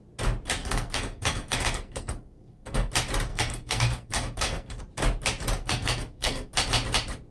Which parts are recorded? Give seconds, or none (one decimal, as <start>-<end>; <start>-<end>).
0.0-0.6; 2.9-3.3; 4.8-5.6; 6.5-7.3